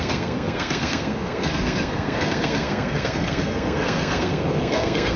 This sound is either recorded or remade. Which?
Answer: remade